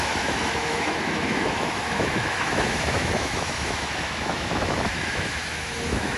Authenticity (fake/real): fake